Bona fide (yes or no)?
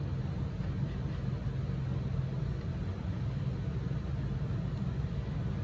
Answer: yes